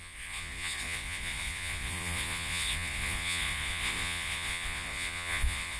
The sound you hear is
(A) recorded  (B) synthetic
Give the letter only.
B